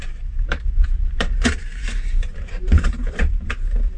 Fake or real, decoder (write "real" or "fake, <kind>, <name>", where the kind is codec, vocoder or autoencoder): fake, vocoder, BigVGAN v2